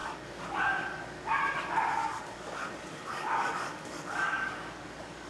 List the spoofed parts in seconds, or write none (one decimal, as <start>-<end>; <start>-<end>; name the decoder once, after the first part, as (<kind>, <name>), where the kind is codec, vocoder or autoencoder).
0.0-1.4 (codec, DAC); 2.0-5.3